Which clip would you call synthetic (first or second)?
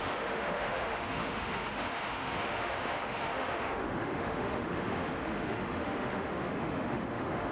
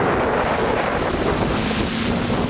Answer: first